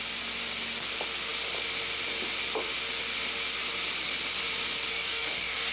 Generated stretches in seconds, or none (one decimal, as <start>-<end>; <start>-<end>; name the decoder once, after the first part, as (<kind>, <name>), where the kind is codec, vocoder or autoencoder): 4.9-5.7 (codec, DAC)